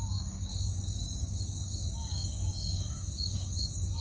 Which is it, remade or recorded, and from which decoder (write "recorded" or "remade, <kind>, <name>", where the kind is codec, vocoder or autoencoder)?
remade, codec, DAC